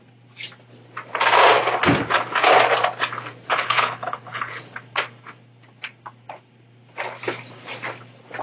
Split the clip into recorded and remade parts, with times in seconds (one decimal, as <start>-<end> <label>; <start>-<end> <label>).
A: 0.0-3.5 recorded; 3.5-4.6 remade; 4.6-8.4 recorded